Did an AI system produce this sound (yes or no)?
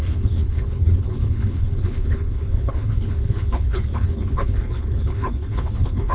yes